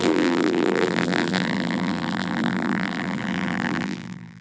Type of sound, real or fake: fake